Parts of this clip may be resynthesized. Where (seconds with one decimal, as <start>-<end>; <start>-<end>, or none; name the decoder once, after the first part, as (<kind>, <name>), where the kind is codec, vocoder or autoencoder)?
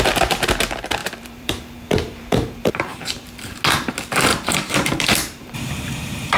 1.0-3.6 (vocoder, BigVGAN v2); 4.3-5.7